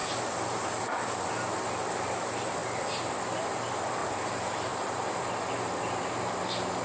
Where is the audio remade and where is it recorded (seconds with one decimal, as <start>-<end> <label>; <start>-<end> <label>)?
0.0-4.0 recorded; 4.0-5.3 remade; 5.3-6.8 recorded